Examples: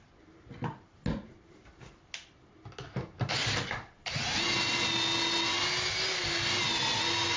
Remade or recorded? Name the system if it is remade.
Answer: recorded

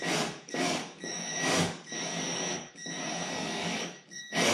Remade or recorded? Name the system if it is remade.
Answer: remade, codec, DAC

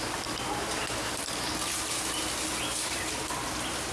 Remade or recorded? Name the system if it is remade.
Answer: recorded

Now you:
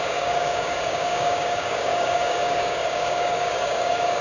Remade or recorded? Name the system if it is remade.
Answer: remade, codec, DAC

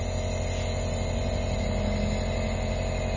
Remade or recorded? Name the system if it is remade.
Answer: recorded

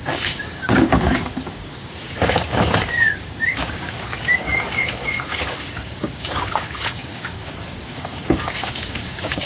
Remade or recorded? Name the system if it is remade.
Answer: remade, codec, DAC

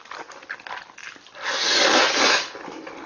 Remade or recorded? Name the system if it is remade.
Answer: recorded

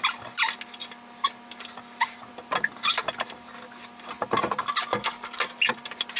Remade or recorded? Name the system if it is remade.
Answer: recorded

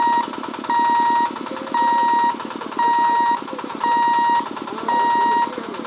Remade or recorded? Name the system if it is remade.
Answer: recorded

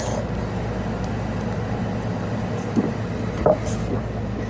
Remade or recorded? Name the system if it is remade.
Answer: recorded